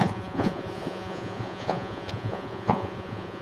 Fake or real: fake